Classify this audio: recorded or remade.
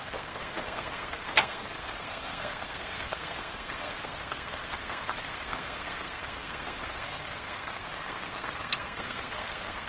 remade